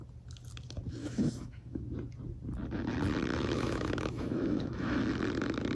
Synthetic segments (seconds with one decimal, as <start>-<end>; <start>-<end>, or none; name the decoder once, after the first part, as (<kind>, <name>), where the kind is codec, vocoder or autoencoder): 1.0-1.8 (autoencoder, DAC-VAE); 3.3-5.0